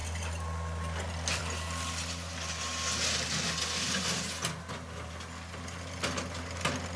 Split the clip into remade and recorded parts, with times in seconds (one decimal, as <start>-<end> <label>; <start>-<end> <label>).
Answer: 0.0-7.0 recorded